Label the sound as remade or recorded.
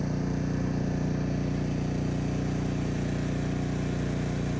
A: recorded